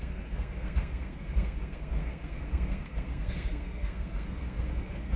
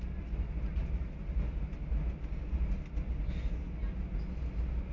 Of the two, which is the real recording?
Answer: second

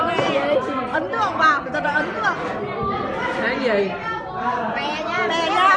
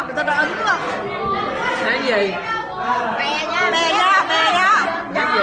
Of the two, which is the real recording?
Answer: second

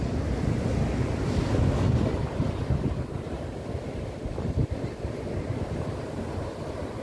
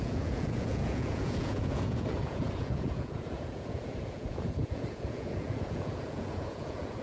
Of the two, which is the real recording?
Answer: first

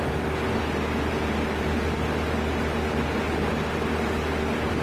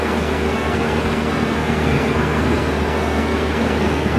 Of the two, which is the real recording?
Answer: first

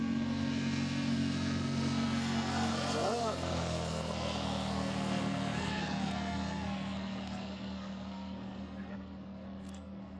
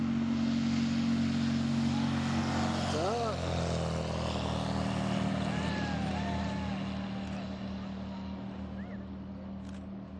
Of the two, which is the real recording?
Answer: second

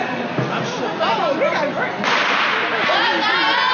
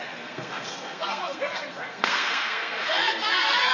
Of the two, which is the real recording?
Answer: first